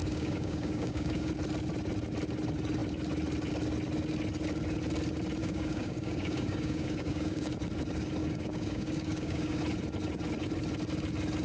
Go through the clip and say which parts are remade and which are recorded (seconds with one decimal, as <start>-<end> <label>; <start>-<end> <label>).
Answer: 0.0-1.3 remade; 1.3-5.4 recorded; 5.4-7.5 remade; 7.5-8.2 recorded; 8.2-9.6 remade; 9.6-11.4 recorded